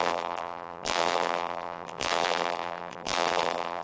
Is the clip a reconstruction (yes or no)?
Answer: yes